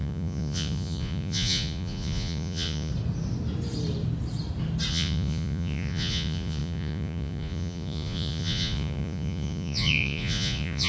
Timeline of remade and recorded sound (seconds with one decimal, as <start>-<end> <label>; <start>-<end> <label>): 0.0-2.9 remade; 2.9-4.9 recorded; 4.9-10.9 remade